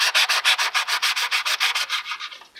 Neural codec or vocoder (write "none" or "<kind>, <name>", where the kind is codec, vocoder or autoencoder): none